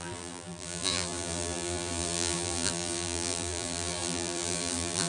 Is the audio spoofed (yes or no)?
yes